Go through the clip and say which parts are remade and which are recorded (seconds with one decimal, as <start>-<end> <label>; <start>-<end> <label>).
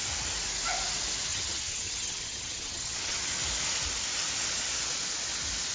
0.0-1.3 recorded; 1.3-3.2 remade; 3.2-5.7 recorded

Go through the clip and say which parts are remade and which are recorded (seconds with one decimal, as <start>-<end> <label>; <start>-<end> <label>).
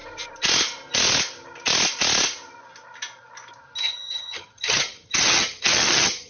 0.0-3.8 recorded; 3.8-6.3 remade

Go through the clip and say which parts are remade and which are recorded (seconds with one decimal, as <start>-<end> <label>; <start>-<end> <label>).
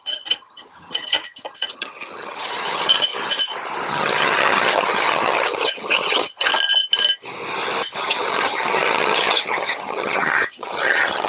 0.0-3.1 remade; 3.1-3.9 recorded; 3.9-6.5 remade; 6.5-8.0 recorded; 8.0-11.3 remade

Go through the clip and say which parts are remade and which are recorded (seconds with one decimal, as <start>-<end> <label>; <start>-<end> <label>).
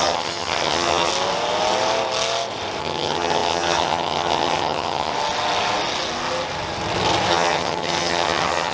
0.0-1.1 remade; 1.1-2.8 recorded; 2.8-5.1 remade; 5.1-7.3 recorded; 7.3-8.7 remade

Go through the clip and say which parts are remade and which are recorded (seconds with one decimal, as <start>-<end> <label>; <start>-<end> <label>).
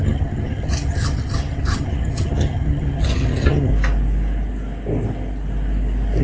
0.0-3.7 remade; 3.7-6.2 recorded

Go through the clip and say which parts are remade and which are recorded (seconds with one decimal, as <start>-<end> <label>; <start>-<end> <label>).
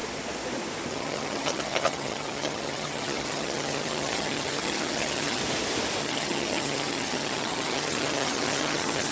0.0-0.9 recorded; 0.9-5.4 remade; 5.4-6.0 recorded; 6.0-9.1 remade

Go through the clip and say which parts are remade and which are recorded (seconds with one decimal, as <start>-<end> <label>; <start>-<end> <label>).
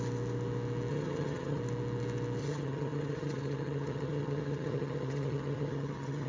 0.0-0.9 recorded; 0.9-1.6 remade; 1.6-2.4 recorded; 2.4-6.3 remade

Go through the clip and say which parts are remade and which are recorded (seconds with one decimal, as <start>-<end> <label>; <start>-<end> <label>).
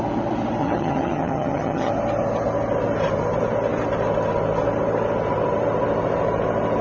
0.0-0.6 recorded; 0.6-1.9 remade; 1.9-6.8 recorded